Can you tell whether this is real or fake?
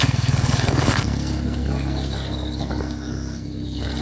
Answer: fake